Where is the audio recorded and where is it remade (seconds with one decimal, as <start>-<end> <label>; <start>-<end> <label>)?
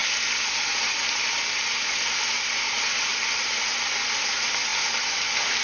0.0-5.6 recorded